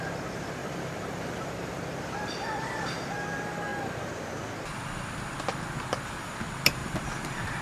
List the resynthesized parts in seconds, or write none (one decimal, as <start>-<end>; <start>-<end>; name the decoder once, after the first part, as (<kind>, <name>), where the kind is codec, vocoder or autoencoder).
0.6-1.8 (vocoder, BigVGAN v2); 6.8-7.6